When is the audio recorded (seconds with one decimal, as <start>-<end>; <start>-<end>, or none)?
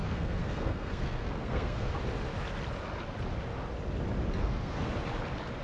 1.9-4.4; 4.9-5.6